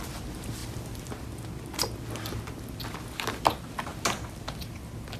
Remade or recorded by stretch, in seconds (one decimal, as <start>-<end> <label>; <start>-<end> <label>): 0.0-5.2 recorded